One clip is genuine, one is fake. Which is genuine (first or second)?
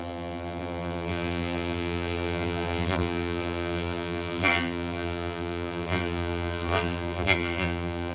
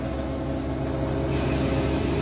second